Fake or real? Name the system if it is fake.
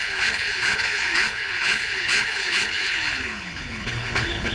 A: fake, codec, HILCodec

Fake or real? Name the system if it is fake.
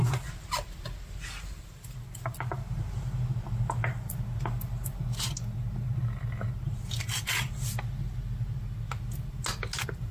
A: real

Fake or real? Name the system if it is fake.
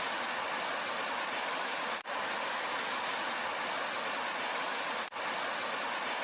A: real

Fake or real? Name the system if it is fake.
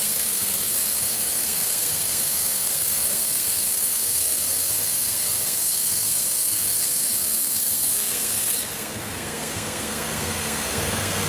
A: fake, codec, SNAC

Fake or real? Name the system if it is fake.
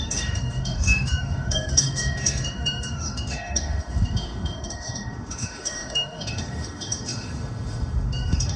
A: fake, autoencoder, DAC-VAE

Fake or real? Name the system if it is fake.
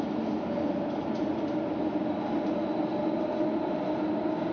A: real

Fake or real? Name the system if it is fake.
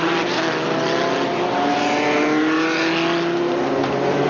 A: real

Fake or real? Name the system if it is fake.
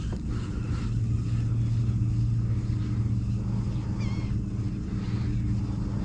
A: real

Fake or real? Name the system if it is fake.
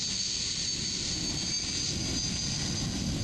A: real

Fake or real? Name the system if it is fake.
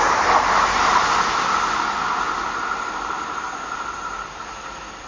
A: real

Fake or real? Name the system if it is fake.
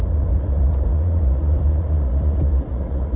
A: fake, vocoder, Vocos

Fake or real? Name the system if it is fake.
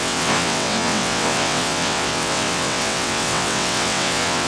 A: fake, vocoder, WaveNeXt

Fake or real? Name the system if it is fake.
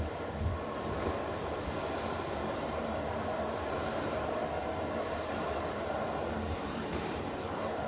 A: fake, vocoder, BigVGAN v2